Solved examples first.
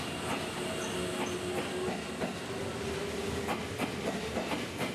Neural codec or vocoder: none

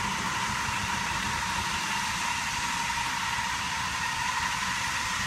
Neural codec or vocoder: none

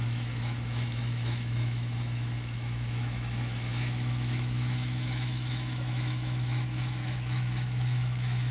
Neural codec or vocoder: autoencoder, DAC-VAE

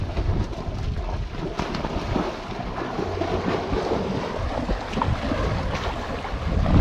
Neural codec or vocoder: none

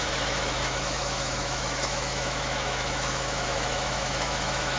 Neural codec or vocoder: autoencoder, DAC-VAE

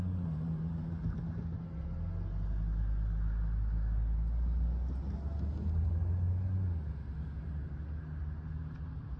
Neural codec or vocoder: none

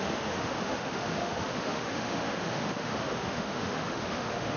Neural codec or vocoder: autoencoder, DAC-VAE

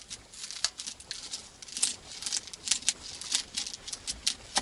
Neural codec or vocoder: none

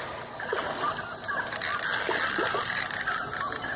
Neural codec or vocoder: none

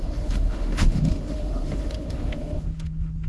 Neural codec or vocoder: autoencoder, DAC-VAE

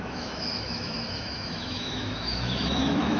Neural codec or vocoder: autoencoder, DAC-VAE